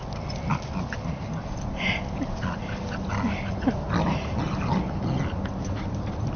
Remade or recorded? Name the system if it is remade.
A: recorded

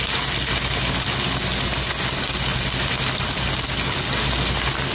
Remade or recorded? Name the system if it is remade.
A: recorded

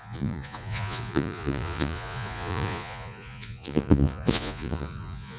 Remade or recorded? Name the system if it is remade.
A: remade, vocoder, Vocos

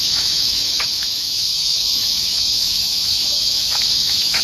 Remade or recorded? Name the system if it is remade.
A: remade, autoencoder, DAC-VAE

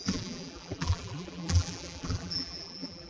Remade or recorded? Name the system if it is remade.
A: remade, vocoder, BigVGAN v2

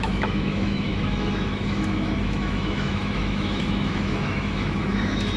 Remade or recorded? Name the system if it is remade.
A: remade, autoencoder, DAC-VAE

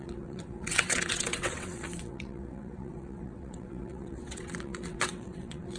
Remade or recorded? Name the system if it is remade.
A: remade, vocoder, WaveNeXt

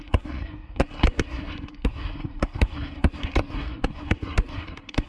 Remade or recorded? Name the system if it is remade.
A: remade, codec, SNAC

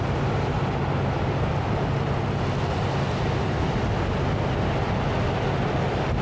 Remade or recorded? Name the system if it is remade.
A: recorded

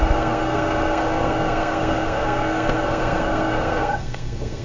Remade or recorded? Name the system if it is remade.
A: remade, codec, SNAC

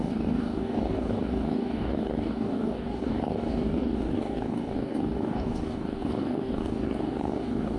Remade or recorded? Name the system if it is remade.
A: remade, codec, DAC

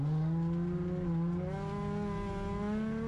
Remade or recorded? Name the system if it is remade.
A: recorded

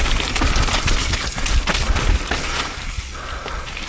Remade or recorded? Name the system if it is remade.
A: recorded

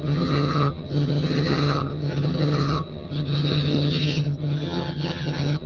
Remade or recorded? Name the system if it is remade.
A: remade, vocoder, HiFi-GAN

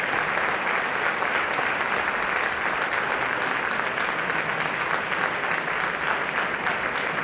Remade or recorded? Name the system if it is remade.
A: recorded